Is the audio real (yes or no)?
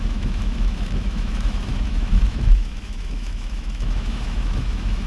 no